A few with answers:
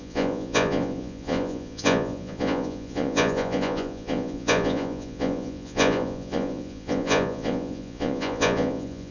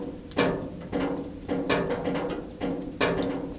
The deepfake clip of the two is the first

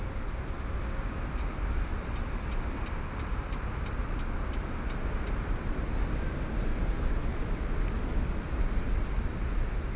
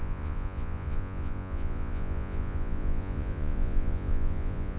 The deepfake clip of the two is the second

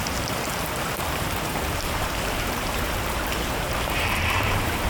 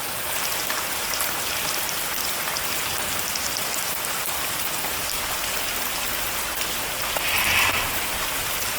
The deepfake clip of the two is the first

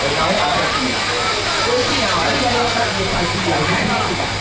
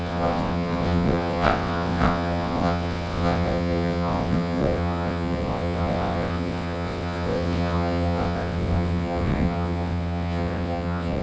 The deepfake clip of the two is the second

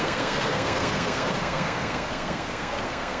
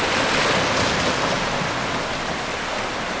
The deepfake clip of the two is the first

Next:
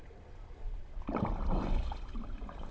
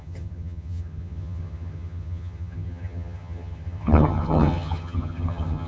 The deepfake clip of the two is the second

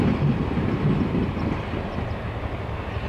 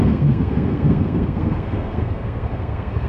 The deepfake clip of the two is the second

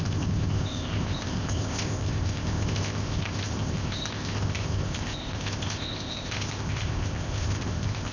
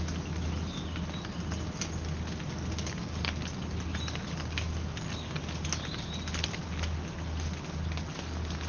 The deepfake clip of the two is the first